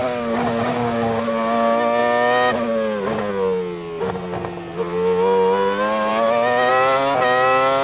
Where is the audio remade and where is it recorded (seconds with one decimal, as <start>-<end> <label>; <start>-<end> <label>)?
0.0-1.3 remade; 1.3-7.8 recorded